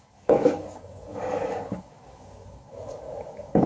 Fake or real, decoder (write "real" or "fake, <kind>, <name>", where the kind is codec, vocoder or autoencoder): fake, codec, DAC